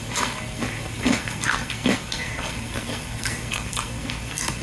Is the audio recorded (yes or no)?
no